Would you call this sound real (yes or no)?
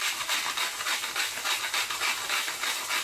yes